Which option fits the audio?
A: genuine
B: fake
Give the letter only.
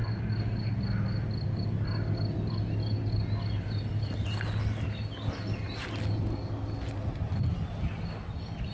A